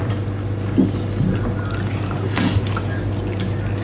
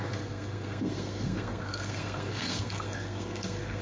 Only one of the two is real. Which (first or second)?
first